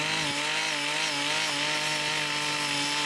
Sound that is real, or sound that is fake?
real